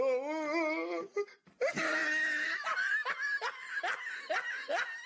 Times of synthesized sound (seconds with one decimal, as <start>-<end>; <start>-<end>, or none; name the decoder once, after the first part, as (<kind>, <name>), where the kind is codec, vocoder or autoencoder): none